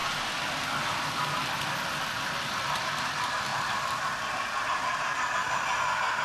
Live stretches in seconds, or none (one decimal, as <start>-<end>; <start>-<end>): 1.2-3.5; 4.6-6.2